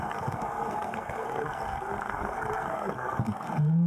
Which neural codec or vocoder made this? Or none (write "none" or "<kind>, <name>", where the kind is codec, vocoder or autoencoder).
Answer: codec, SNAC